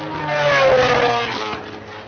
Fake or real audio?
real